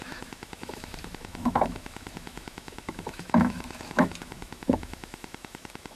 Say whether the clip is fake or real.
fake